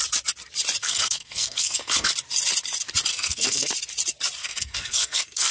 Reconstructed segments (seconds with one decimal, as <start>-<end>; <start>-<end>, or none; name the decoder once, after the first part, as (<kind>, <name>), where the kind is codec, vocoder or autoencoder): 0.8-2.1 (codec, SNAC); 3.1-3.7; 4.4-5.5